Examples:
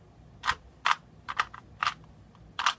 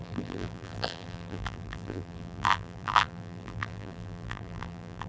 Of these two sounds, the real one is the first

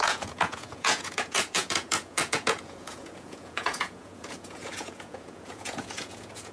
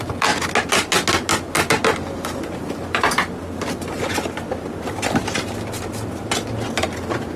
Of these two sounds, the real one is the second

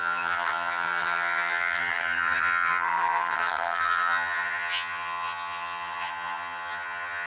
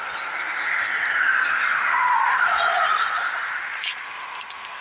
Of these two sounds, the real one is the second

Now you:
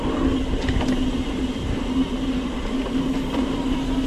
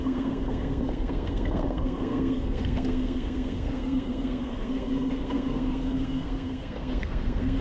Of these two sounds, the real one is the first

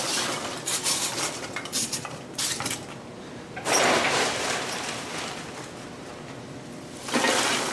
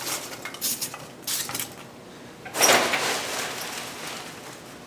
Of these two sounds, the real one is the second